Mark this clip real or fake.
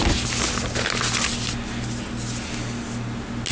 real